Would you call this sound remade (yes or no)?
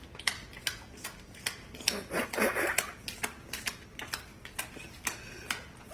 no